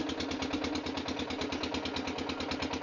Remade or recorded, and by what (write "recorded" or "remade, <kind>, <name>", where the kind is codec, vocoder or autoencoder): recorded